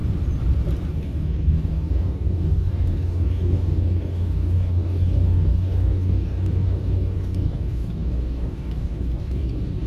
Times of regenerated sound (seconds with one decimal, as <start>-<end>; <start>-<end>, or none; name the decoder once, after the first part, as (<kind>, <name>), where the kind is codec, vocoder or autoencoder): 0.9-9.9 (codec, DAC)